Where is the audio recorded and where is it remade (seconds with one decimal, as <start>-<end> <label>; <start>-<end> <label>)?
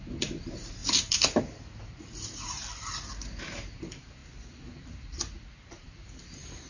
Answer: 0.0-2.6 remade; 2.6-3.2 recorded; 3.2-4.2 remade; 4.2-5.5 recorded; 5.5-6.7 remade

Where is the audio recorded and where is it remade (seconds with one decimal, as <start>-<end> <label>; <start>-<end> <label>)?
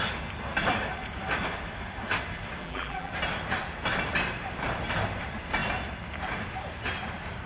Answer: 0.0-2.6 recorded; 2.6-3.1 remade; 3.1-7.5 recorded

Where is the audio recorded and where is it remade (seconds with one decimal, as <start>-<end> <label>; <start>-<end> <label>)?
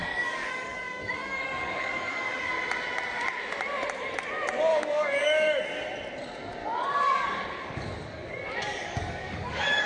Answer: 0.0-2.5 remade; 2.5-4.7 recorded; 4.7-5.6 remade; 5.6-6.6 recorded; 6.6-9.9 remade